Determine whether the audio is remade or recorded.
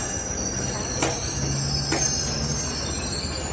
recorded